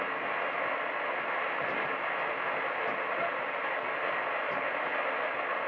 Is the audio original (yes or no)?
yes